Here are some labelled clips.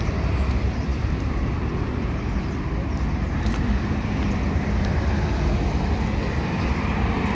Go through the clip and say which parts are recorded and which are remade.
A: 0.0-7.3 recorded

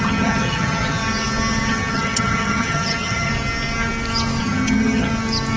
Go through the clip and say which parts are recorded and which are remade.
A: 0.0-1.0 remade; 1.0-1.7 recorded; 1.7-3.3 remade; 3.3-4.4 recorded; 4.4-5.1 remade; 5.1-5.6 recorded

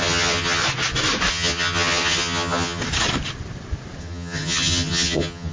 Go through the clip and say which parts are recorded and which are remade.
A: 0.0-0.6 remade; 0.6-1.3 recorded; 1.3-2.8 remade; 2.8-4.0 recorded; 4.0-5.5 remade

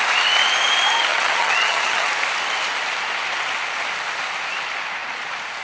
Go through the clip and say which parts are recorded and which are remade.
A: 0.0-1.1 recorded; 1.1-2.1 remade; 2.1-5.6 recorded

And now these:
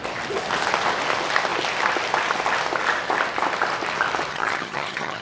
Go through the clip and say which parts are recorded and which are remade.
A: 0.0-4.3 recorded; 4.3-5.2 remade